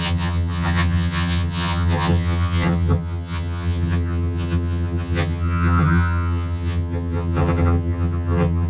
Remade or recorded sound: remade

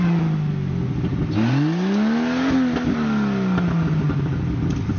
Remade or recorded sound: recorded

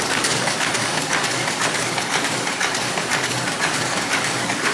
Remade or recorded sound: remade